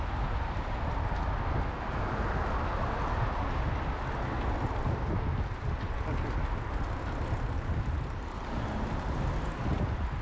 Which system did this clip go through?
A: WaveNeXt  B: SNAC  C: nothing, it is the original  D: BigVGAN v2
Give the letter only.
C